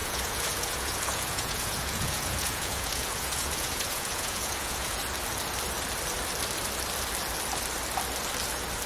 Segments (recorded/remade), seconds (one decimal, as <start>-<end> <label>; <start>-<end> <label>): 0.0-5.0 remade; 5.0-8.9 recorded